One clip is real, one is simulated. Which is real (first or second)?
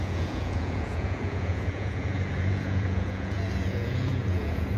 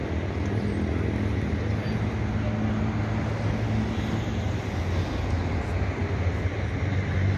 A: second